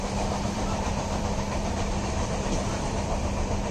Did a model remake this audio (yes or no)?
yes